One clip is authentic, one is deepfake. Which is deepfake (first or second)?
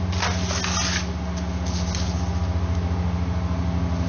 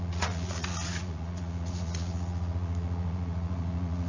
second